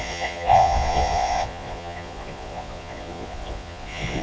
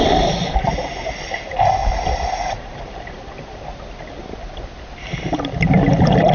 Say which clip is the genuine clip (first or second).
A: second